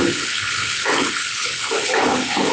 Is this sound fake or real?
fake